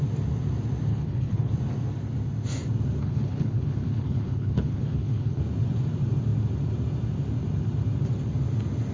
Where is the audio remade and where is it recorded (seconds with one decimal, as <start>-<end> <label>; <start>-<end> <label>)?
0.0-0.9 recorded; 0.9-1.5 remade; 1.5-3.0 recorded; 3.0-5.4 remade; 5.4-8.9 recorded